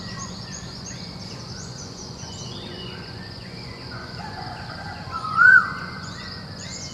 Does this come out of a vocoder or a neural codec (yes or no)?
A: yes